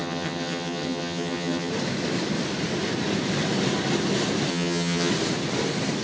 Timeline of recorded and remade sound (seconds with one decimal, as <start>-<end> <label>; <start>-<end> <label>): 0.0-1.7 remade; 1.7-4.5 recorded; 4.5-5.1 remade; 5.1-6.0 recorded